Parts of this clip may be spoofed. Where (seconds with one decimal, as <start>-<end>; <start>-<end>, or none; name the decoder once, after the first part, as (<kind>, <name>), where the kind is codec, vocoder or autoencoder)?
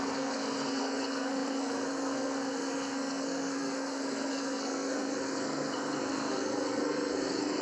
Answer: 0.0-7.6 (codec, SNAC)